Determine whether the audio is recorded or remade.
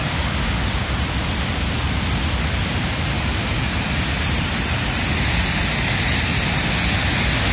recorded